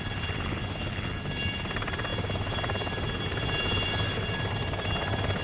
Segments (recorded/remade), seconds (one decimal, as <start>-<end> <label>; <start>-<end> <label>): 0.0-5.4 recorded